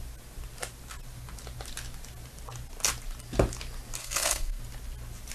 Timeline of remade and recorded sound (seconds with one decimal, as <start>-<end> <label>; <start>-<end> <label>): 0.0-4.0 recorded; 4.0-4.6 remade; 4.6-5.3 recorded

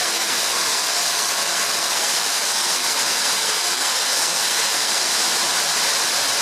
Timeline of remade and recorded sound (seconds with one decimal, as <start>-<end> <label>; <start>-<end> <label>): 0.0-5.1 remade; 5.1-6.4 recorded